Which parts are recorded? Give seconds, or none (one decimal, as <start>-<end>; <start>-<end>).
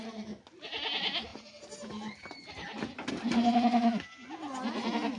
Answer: 0.0-5.2